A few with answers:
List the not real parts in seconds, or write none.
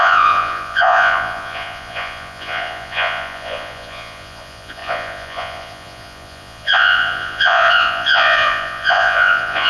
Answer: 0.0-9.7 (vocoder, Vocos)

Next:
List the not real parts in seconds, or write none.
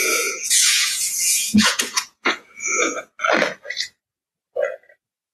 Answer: 0.0-3.2 (vocoder, Vocos)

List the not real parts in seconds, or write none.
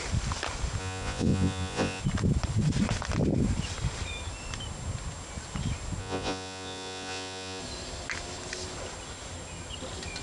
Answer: 0.8-2.0 (vocoder, Vocos); 6.0-7.6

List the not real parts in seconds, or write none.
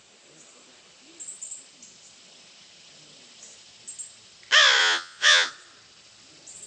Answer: 4.8-5.5 (vocoder, Vocos)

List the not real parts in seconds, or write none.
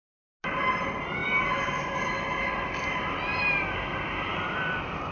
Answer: none